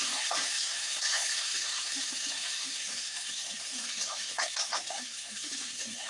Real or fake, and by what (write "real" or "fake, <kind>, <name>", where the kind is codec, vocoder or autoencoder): fake, codec, SNAC